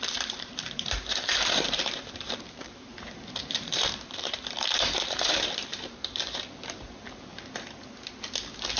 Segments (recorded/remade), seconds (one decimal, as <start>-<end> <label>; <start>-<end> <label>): 0.0-2.9 remade; 2.9-3.4 recorded; 3.4-7.3 remade; 7.3-8.8 recorded